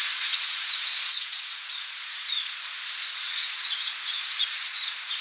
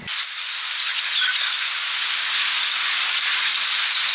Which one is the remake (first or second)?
first